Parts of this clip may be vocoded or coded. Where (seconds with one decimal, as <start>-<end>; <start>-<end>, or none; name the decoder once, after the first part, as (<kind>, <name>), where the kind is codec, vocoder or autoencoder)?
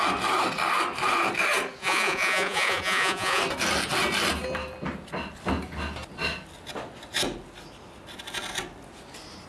1.8-3.4 (vocoder, Vocos)